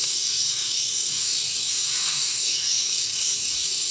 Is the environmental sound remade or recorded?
remade